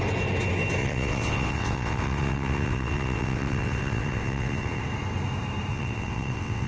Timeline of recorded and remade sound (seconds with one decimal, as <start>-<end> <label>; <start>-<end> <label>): 0.0-0.8 recorded; 0.8-4.8 remade; 4.8-5.7 recorded; 5.7-6.7 remade